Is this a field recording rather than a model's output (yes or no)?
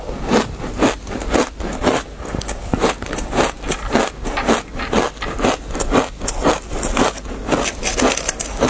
yes